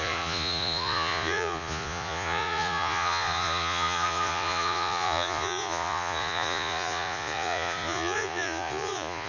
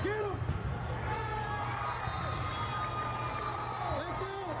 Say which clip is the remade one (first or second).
first